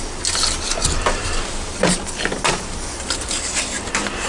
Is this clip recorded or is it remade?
recorded